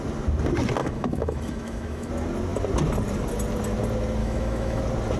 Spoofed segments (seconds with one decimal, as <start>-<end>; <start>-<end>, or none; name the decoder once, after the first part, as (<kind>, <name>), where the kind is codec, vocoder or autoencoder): 0.8-2.1 (autoencoder, DAC-VAE); 4.2-4.8